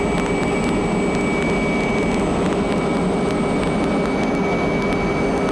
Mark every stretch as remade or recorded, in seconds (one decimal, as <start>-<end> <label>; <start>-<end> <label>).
0.0-5.5 recorded